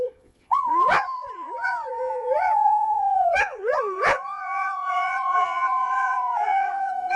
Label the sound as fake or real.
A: fake